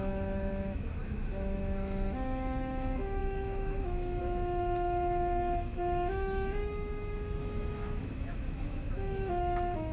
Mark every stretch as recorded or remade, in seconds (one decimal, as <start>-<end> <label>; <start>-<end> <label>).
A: 0.0-9.9 remade